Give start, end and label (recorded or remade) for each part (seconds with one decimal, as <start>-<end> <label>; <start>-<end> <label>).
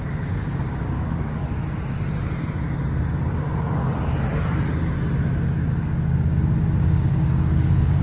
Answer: 0.0-1.4 remade; 1.4-5.7 recorded; 5.7-8.0 remade